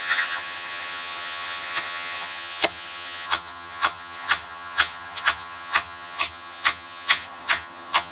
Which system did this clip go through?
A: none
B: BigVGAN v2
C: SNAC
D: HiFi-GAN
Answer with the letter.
D